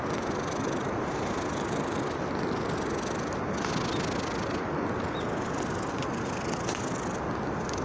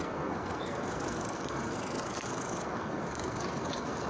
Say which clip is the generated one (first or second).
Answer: second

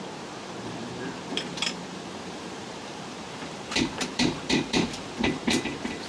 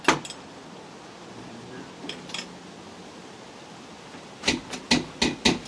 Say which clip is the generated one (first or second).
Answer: first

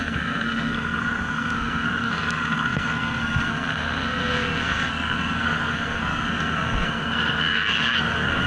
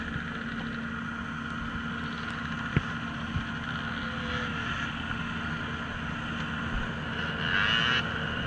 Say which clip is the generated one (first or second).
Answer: first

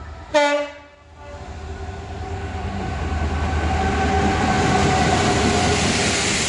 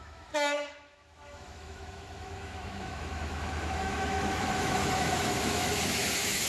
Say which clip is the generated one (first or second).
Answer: second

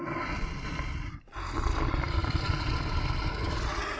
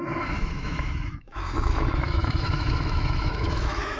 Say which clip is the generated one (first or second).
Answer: second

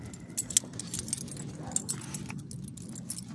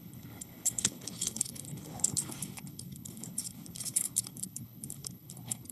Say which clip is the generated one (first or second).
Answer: second